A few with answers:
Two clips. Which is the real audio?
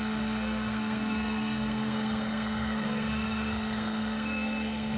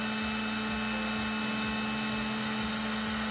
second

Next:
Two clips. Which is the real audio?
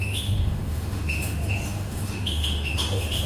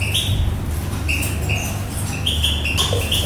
second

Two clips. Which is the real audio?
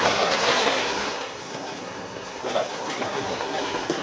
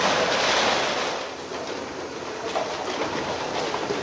second